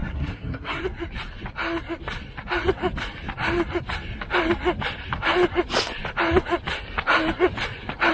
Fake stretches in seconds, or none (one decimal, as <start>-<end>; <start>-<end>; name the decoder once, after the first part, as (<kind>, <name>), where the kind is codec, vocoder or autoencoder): 0.0-0.8 (codec, SNAC)